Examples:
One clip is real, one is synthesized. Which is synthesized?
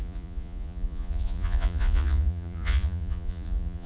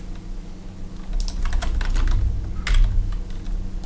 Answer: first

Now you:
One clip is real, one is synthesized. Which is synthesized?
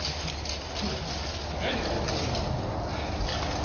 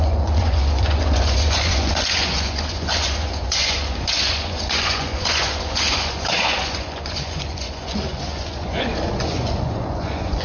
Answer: second